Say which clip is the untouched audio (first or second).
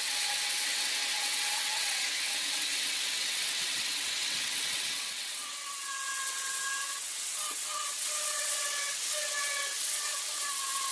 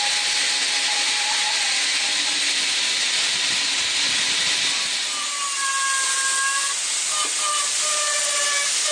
second